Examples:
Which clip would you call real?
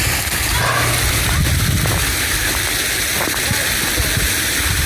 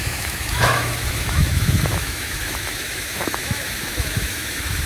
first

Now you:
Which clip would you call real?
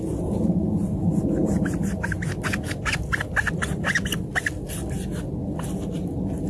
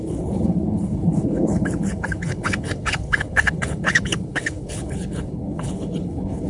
first